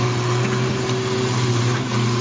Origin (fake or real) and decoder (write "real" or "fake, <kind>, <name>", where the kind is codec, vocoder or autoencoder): real